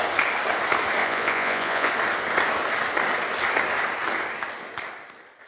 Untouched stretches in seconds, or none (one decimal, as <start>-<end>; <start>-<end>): 0.0-1.0; 1.9-5.5